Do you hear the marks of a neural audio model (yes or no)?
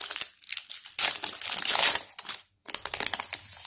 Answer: no